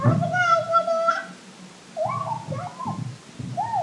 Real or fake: real